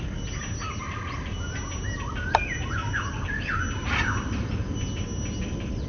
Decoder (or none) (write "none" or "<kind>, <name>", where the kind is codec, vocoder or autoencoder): none